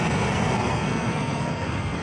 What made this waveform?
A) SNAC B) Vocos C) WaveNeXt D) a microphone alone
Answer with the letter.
A